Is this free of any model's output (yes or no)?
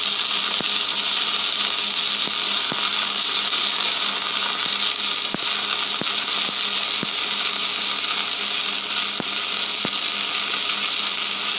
yes